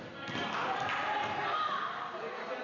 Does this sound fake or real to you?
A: real